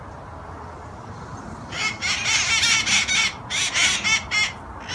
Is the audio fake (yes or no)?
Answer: no